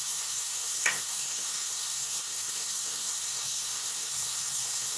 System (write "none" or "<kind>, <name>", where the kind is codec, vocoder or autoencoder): codec, SNAC